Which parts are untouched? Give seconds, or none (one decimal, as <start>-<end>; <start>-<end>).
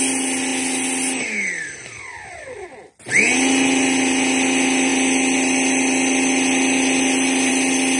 0.0-8.0